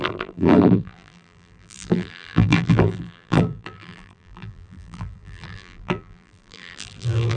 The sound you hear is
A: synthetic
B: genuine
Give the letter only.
A